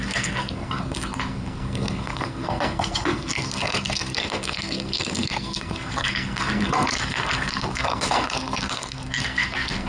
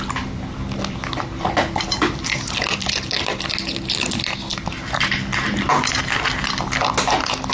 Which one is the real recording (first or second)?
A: second